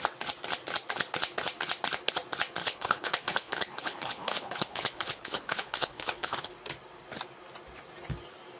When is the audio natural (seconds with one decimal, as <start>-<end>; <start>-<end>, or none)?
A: 0.0-2.6; 6.5-8.6